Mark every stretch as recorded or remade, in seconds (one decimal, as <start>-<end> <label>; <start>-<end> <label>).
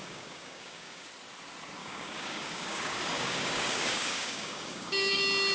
0.0-1.1 remade; 1.1-1.8 recorded; 1.8-5.1 remade; 5.1-5.5 recorded